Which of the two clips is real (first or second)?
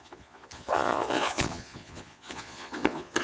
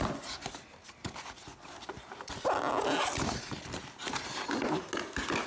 second